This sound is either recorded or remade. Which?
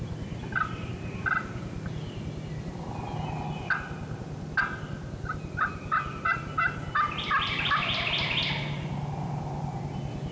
recorded